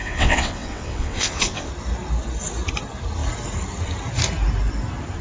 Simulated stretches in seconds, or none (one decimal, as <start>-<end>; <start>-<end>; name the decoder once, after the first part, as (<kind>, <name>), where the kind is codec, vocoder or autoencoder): 0.0-1.7 (vocoder, WaveNeXt)